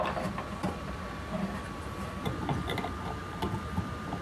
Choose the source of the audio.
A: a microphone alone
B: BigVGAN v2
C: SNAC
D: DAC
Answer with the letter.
A